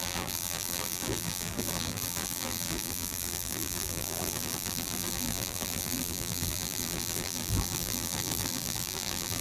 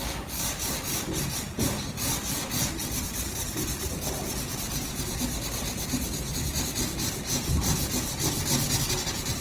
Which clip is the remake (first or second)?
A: first